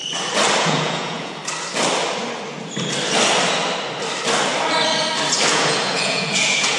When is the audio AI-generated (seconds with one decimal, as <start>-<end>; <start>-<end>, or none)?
0.6-1.4; 5.5-6.8